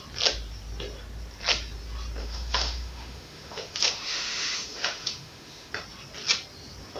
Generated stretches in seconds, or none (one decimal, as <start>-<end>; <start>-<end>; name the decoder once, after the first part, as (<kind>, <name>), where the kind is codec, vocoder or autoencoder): 2.2-5.7 (autoencoder, DAC-VAE)